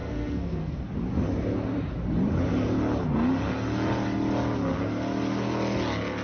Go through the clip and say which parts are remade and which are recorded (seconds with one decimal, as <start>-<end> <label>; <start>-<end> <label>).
0.0-0.8 remade; 0.8-6.2 recorded